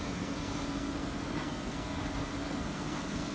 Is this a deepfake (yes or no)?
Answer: yes